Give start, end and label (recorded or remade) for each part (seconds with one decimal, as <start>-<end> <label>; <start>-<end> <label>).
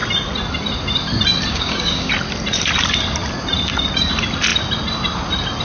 0.0-1.5 recorded; 1.5-2.1 remade; 2.1-5.6 recorded